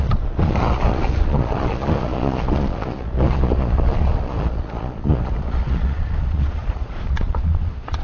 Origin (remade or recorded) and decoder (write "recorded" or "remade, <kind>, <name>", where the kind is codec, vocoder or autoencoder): remade, vocoder, Vocos